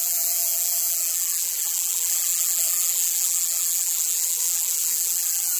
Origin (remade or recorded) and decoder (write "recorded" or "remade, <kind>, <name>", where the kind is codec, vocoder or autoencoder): remade, vocoder, BigVGAN v2